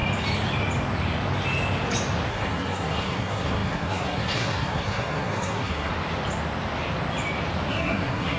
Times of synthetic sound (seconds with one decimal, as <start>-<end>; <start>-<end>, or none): 2.3-5.9; 7.7-8.4